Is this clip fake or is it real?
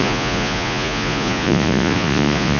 fake